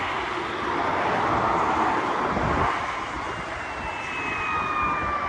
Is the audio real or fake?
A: real